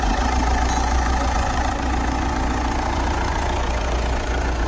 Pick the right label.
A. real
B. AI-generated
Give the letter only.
B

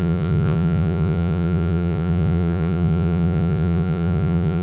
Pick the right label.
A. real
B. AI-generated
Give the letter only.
B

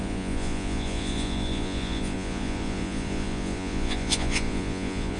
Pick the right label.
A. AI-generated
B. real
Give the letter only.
A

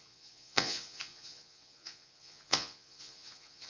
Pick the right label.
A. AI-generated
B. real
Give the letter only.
A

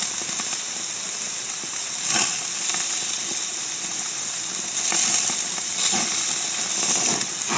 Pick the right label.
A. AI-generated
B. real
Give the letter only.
B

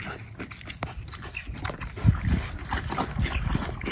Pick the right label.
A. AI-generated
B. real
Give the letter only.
B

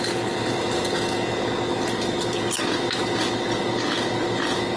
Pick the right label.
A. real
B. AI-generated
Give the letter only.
A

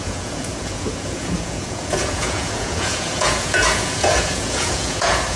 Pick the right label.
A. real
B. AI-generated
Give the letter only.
B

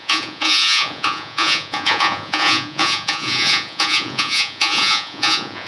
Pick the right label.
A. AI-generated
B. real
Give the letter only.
A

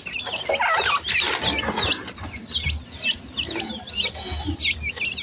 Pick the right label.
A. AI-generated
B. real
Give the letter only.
B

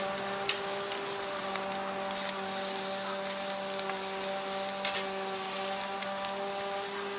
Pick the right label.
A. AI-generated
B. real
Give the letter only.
B